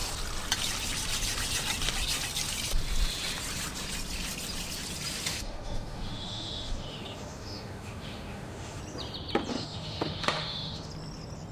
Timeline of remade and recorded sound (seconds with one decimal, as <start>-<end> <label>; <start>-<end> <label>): 0.0-5.3 recorded; 5.3-8.8 remade; 8.8-9.5 recorded; 9.5-10.9 remade; 10.9-11.5 recorded